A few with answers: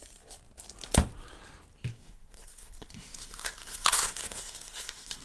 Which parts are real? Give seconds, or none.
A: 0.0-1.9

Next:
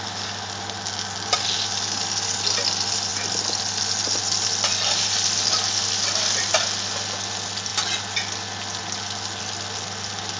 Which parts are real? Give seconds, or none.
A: 0.0-10.4

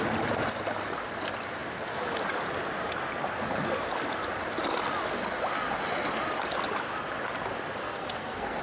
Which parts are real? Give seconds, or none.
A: 0.0-7.8

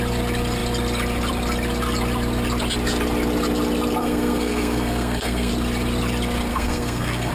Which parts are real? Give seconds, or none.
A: 0.0-4.0; 5.5-6.5

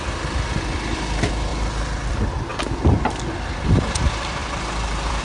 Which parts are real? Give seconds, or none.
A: 1.5-2.1

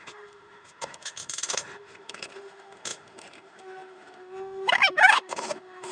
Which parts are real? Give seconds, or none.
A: none

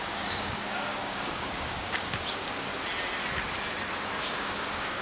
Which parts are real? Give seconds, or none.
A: 2.7-4.2

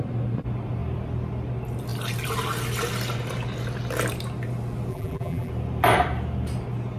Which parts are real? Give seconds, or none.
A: 0.0-4.9; 5.5-7.0